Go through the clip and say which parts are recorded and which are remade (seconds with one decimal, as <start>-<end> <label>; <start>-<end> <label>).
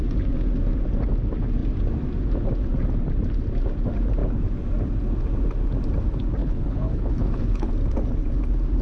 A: 0.0-6.4 recorded; 6.4-7.7 remade; 7.7-8.8 recorded